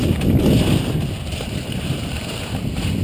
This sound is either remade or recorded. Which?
recorded